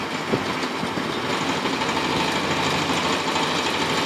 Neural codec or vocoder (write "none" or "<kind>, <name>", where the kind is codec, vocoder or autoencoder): none